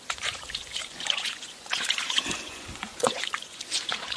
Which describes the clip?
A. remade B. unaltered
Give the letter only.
A